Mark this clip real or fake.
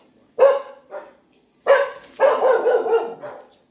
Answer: real